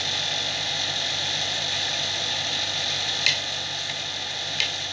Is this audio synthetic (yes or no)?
no